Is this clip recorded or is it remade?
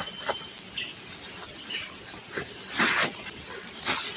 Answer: recorded